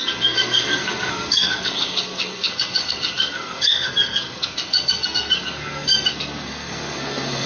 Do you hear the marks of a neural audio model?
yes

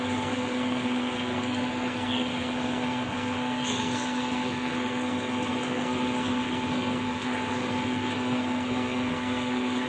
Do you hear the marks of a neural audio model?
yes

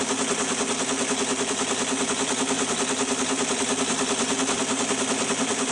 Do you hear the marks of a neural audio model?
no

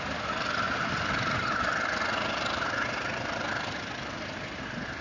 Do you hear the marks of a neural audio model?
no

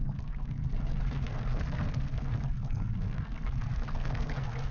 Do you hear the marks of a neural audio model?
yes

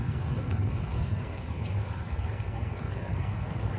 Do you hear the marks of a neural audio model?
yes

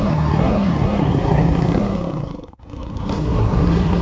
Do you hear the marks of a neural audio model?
yes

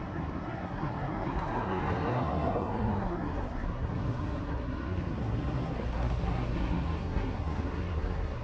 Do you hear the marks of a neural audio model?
yes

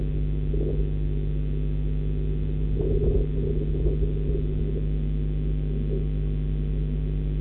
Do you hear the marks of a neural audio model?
no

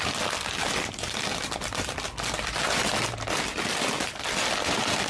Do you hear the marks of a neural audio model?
no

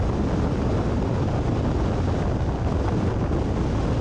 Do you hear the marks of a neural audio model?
no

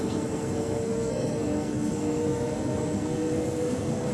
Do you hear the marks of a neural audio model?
yes